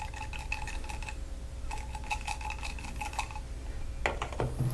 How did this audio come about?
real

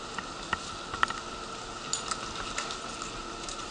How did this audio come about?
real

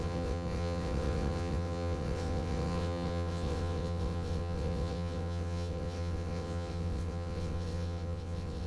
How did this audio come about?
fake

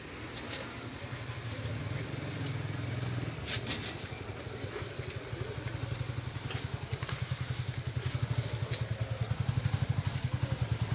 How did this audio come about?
real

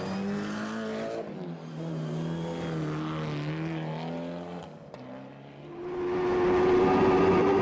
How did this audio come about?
real